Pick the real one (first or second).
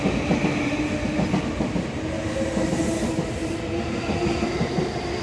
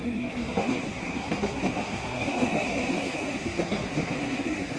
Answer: first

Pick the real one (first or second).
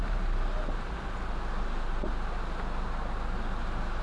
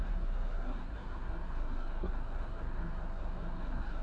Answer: first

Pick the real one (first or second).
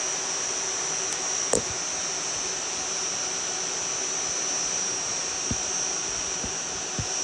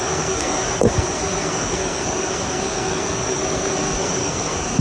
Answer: first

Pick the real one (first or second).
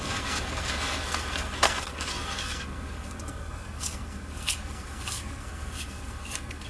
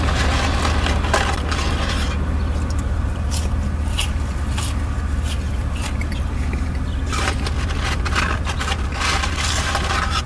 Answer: second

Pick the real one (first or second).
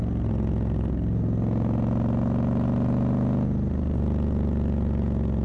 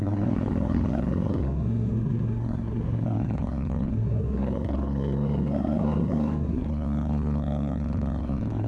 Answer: first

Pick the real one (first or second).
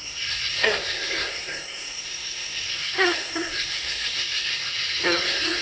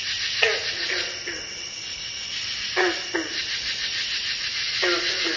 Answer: second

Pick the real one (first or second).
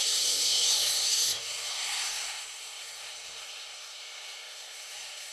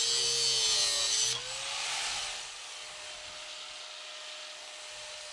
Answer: second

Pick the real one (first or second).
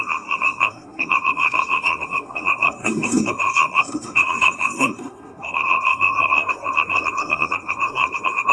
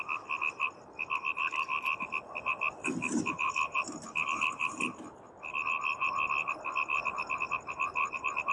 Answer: second